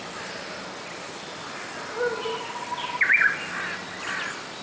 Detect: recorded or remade recorded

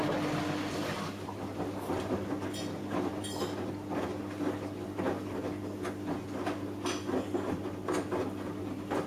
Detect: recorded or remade recorded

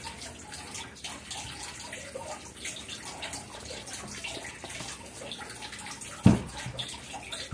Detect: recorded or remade recorded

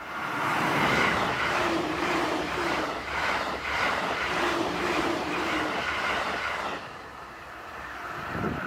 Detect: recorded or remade remade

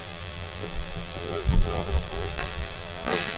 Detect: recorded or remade remade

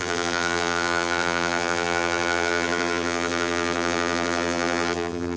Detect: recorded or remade remade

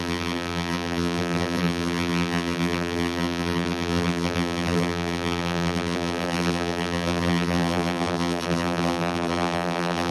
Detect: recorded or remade remade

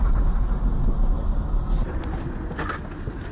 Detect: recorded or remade recorded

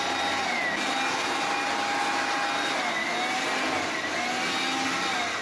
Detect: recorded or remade recorded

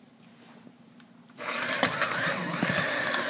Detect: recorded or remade remade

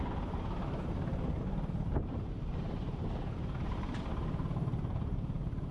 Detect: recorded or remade remade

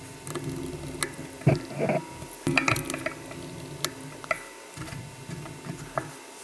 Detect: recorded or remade recorded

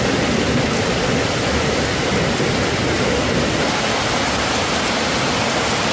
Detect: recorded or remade recorded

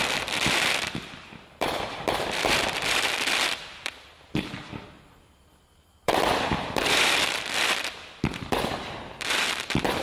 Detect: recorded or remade remade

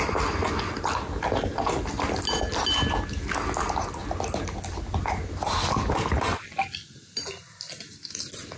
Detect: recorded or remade recorded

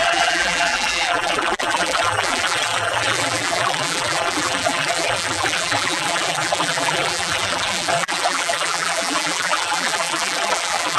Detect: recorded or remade remade